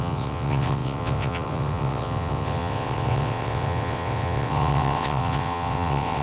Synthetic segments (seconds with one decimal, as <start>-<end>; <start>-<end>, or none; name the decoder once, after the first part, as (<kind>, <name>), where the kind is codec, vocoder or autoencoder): 0.0-6.2 (vocoder, WaveNeXt)